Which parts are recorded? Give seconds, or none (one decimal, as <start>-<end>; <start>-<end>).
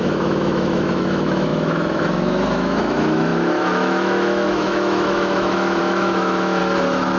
6.6-7.2